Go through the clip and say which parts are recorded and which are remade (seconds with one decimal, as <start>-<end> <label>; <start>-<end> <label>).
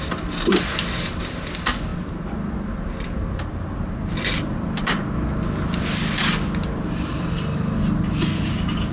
0.0-8.9 recorded